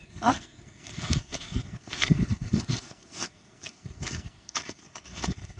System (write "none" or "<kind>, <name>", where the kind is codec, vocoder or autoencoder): codec, SNAC